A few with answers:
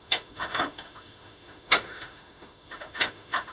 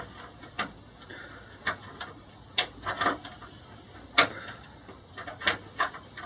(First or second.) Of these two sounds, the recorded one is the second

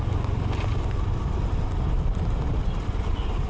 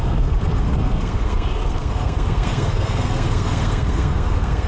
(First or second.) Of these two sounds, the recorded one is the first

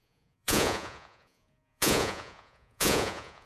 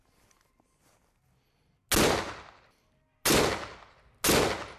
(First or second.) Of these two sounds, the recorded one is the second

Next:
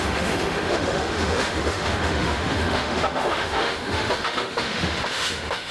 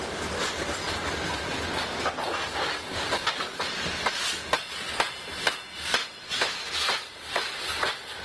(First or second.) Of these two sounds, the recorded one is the second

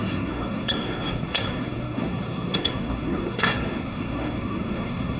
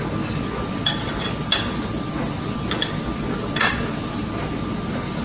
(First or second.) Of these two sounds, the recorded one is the second